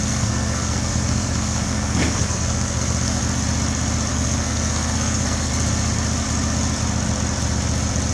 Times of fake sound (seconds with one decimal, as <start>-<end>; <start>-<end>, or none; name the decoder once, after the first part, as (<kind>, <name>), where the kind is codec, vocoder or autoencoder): 0.0-3.2 (codec, SNAC); 4.1-5.5